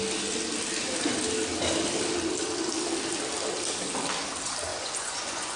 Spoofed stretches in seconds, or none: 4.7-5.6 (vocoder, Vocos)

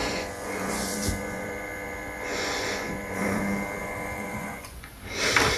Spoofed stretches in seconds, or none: 0.0-3.4 (vocoder, Vocos); 3.8-4.9

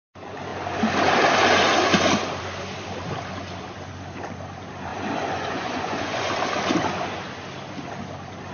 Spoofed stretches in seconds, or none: 4.9-6.3 (vocoder, Vocos)

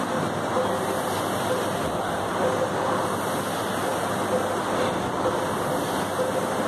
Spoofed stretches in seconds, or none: none

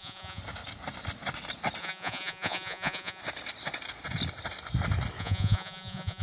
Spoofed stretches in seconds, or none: 0.0-0.4 (vocoder, Vocos); 1.8-3.2; 5.2-6.2

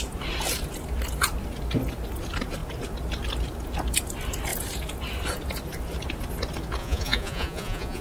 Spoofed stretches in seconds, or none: 6.8-8.0 (vocoder, Vocos)

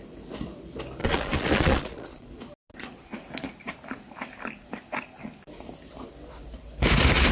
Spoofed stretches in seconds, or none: 1.0-2.3 (vocoder, Vocos)